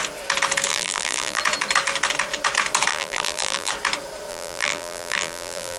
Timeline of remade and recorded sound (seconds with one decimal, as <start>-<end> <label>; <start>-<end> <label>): 0.0-0.7 recorded; 0.7-1.4 remade; 1.4-2.9 recorded; 2.9-3.7 remade; 3.7-4.3 recorded; 4.3-5.8 remade